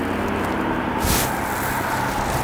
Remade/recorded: recorded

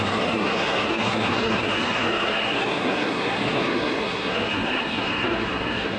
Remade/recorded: remade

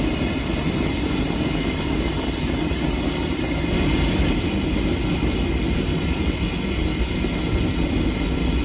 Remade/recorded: recorded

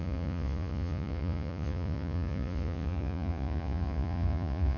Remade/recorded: remade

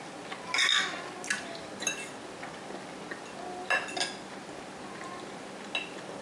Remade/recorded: recorded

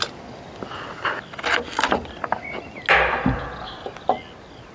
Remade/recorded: recorded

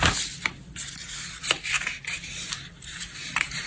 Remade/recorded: recorded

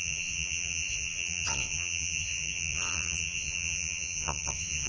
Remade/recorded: remade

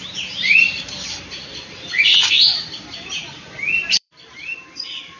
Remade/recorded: remade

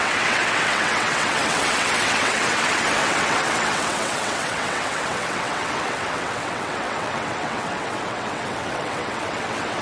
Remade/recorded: remade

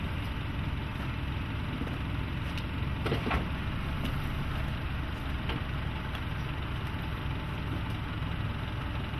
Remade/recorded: recorded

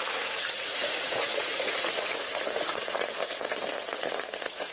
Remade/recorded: remade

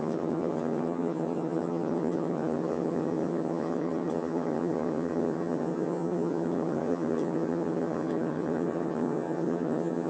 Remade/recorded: remade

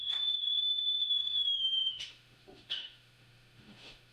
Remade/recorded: remade